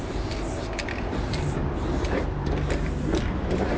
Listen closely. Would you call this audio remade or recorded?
recorded